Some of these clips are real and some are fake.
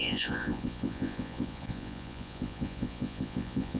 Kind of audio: fake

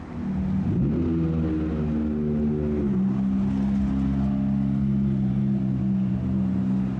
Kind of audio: real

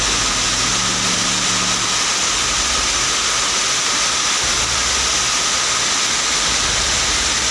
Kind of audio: real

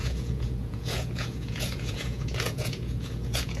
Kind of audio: fake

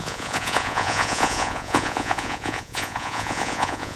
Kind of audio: fake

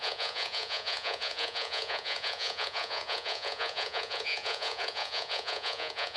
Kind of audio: fake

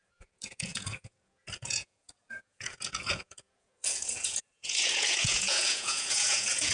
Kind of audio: fake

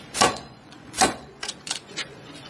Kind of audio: fake